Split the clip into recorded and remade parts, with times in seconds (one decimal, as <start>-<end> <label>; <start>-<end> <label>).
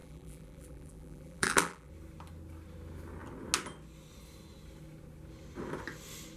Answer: 0.0-1.9 remade; 1.9-6.4 recorded